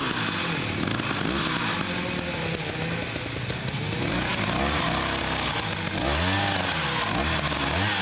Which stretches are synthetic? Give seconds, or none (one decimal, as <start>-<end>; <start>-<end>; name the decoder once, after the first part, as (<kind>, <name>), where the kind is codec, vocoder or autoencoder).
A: none